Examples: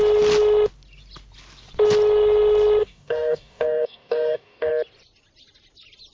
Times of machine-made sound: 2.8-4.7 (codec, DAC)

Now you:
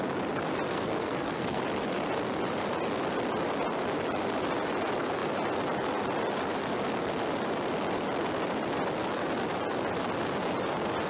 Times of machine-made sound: 0.7-1.6 (codec, SNAC)

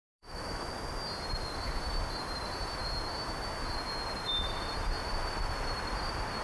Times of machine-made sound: 0.0-0.7 (autoencoder, DAC-VAE)

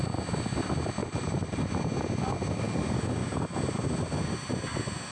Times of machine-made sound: 1.0-1.7 (vocoder, BigVGAN v2)

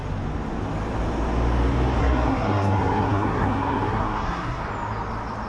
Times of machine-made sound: 2.0-4.6 (codec, SNAC)

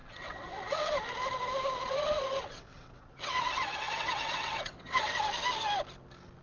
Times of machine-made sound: 0.0-1.0 (vocoder, WaveNeXt); 1.8-5.2

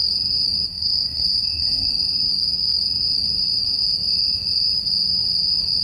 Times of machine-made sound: 0.7-1.9 (codec, SNAC)

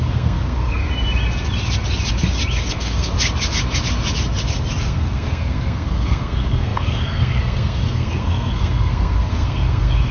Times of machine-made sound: 0.0-0.8 (codec, SNAC); 2.7-3.1; 4.8-10.1